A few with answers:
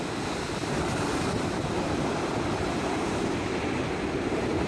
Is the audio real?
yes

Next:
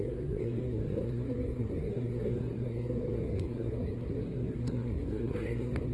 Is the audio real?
no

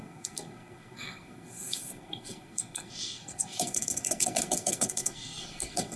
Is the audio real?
no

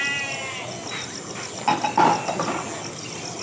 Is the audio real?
yes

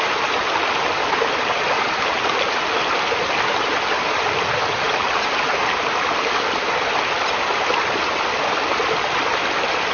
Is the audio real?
yes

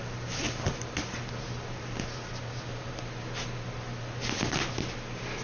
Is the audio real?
yes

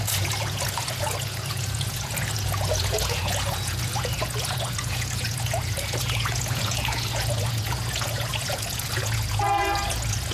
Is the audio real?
no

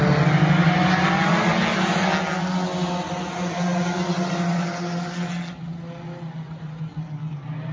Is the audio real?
yes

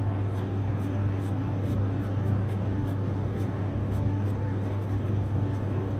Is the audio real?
no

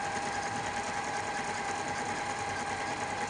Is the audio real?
yes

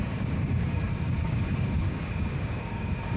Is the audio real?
no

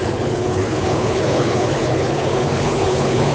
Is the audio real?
no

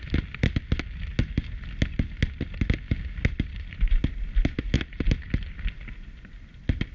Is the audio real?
yes